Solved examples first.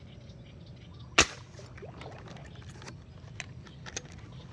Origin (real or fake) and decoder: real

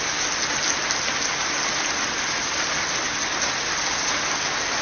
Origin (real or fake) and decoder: real